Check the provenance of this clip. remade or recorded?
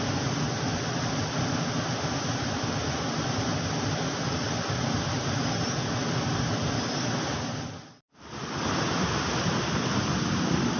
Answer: recorded